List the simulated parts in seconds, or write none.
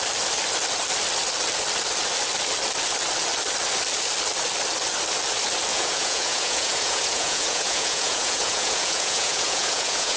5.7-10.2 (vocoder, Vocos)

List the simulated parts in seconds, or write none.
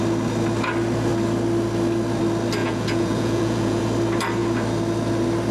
2.6-3.8 (vocoder, Vocos)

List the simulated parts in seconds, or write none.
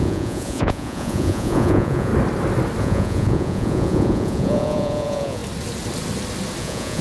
0.0-2.1 (vocoder, Vocos); 2.8-5.4; 6.6-7.0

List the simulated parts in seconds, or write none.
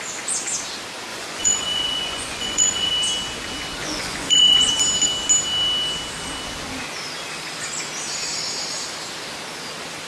1.1-2.9 (vocoder, Vocos); 3.8-4.7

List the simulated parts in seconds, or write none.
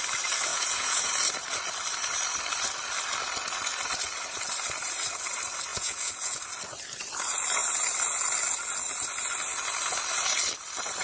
0.5-1.1 (vocoder, Vocos); 5.7-6.4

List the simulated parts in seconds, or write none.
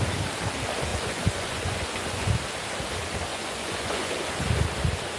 0.9-2.3 (vocoder, Vocos); 3.3-4.1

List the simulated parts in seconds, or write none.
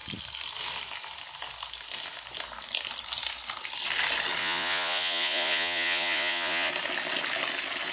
4.4-6.7 (vocoder, Vocos)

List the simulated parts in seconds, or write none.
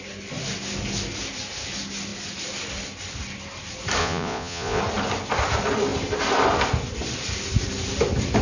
4.0-4.8 (vocoder, Vocos)